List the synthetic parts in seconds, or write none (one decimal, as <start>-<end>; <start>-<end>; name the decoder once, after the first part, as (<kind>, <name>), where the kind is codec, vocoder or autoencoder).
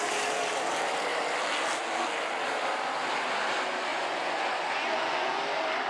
3.9-5.4 (vocoder, Vocos)